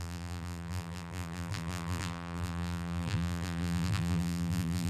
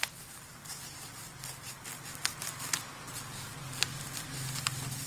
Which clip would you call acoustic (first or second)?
second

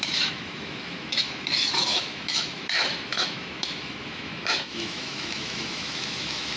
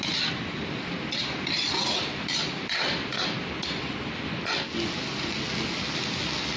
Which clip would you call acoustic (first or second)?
second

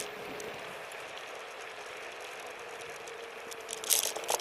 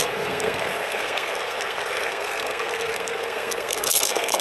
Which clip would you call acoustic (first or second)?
first